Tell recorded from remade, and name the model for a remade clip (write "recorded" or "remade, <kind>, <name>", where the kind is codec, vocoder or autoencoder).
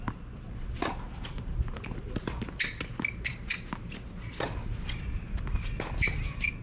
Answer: recorded